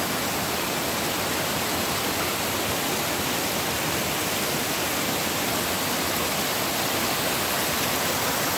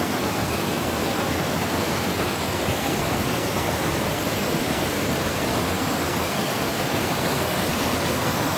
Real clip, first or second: first